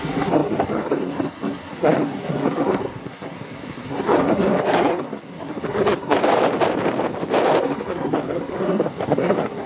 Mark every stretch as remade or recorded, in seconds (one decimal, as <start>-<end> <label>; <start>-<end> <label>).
0.0-6.2 remade; 6.2-7.6 recorded; 7.6-9.7 remade